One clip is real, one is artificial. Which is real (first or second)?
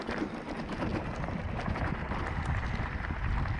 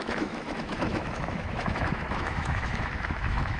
first